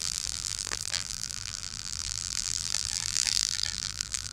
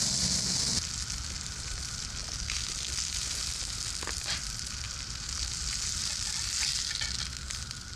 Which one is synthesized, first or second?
first